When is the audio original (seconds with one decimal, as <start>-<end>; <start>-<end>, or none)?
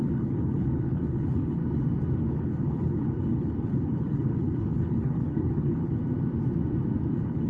1.6-2.2; 6.0-7.1